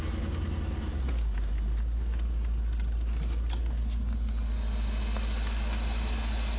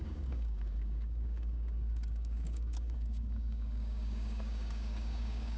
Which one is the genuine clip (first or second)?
first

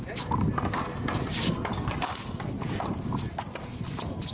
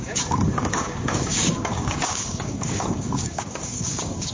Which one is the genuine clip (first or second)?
first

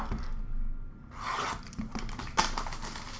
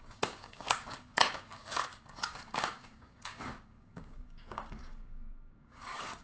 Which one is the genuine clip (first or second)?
first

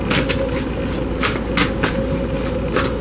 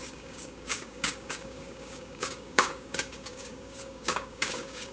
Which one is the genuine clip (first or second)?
first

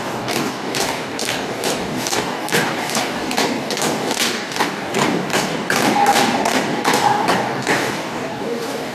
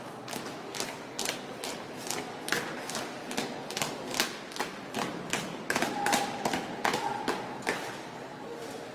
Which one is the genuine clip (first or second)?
second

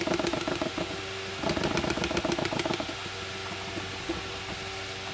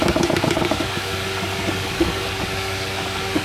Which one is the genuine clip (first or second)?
first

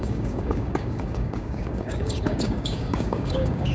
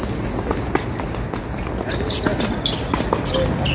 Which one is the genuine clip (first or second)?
second